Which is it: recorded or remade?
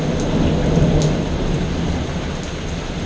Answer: recorded